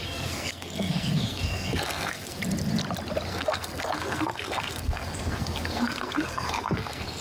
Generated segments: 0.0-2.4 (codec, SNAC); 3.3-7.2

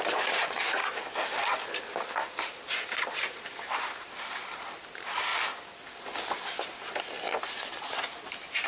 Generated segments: 0.0-0.8 (vocoder, BigVGAN v2); 2.1-5.3; 7.0-8.7

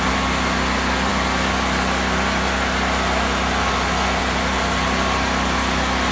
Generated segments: none

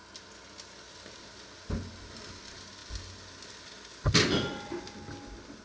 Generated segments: none

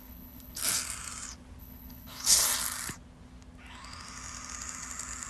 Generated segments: 0.0-0.6 (codec, HILCodec); 1.6-2.4